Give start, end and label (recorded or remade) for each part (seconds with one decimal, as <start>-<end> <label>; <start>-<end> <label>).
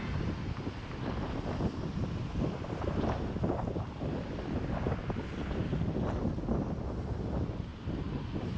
0.0-8.6 recorded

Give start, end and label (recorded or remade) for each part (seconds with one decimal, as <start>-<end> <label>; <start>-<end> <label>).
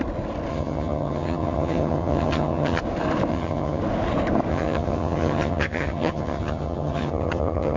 0.0-0.5 recorded; 0.5-2.8 remade; 2.8-3.3 recorded; 3.3-3.8 remade; 3.8-4.5 recorded; 4.5-7.8 remade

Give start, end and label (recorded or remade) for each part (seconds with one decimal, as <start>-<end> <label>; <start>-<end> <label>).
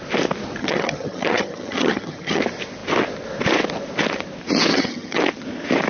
0.0-0.6 recorded; 0.6-2.4 remade; 2.4-4.7 recorded; 4.7-5.2 remade; 5.2-5.9 recorded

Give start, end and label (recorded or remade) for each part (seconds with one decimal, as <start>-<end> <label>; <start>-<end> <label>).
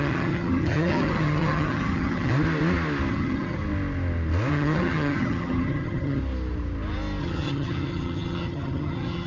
0.0-2.3 remade; 2.3-3.1 recorded; 3.1-3.6 remade; 3.6-4.5 recorded; 4.5-6.2 remade; 6.2-7.2 recorded; 7.2-9.3 remade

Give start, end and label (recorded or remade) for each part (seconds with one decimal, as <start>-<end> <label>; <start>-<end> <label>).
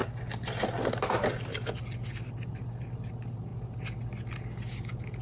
0.0-5.2 recorded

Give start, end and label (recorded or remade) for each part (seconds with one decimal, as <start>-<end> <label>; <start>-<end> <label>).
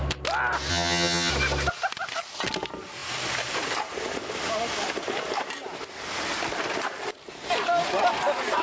0.0-0.7 recorded; 0.7-1.3 remade; 1.3-8.6 recorded